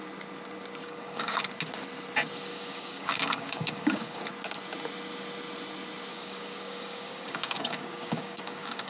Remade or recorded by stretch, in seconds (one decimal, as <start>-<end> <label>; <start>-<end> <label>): 0.0-0.8 recorded; 0.8-1.4 remade; 1.4-2.5 recorded; 2.5-4.2 remade; 4.2-6.1 recorded; 6.1-8.9 remade